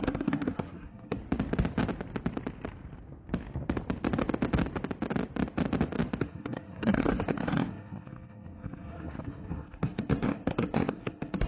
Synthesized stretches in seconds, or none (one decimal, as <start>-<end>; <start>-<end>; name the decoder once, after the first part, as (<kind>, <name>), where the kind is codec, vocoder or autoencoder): 0.0-1.2 (codec, SNAC); 6.2-11.5

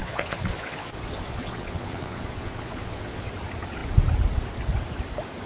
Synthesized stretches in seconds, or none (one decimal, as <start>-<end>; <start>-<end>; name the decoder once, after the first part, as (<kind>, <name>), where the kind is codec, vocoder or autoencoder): 0.0-3.3 (vocoder, Vocos)

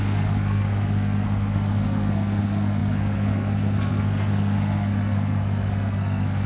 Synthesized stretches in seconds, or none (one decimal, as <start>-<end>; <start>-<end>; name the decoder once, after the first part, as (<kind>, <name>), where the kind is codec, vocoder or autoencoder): 0.0-6.5 (codec, SNAC)

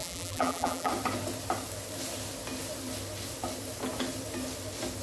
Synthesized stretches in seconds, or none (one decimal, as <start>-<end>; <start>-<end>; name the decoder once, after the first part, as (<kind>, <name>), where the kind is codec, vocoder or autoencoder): 0.0-0.9 (vocoder, BigVGAN v2)